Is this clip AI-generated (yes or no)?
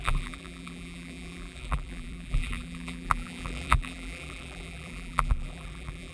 yes